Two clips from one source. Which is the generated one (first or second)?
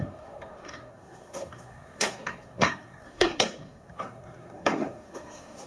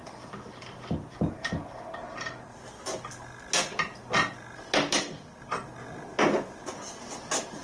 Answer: first